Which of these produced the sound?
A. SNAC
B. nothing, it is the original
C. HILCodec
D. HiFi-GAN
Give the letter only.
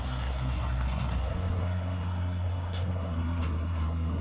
A